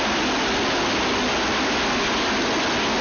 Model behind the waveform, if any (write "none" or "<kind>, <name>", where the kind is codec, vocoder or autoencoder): none